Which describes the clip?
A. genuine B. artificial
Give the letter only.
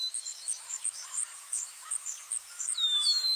B